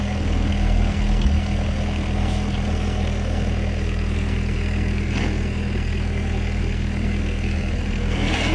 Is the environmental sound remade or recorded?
remade